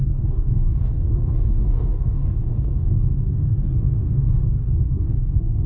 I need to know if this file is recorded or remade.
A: remade